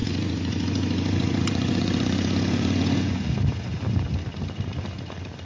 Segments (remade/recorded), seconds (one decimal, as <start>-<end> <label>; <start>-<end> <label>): 0.0-3.3 remade; 3.3-5.5 recorded